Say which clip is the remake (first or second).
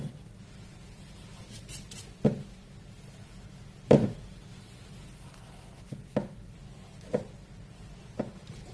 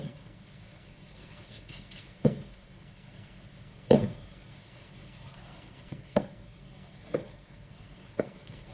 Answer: second